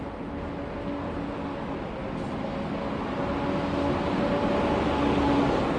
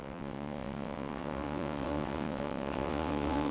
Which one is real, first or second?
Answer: first